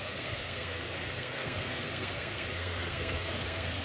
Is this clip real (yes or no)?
no